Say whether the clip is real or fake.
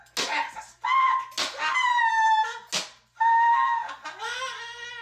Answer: real